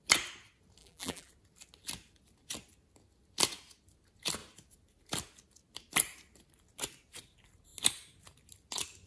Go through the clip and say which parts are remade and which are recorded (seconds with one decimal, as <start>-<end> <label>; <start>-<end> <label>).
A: 0.0-0.8 recorded; 0.8-1.3 remade; 1.3-9.1 recorded